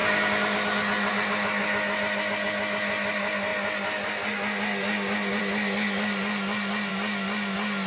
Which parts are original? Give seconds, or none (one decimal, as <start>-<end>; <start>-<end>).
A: 0.0-7.9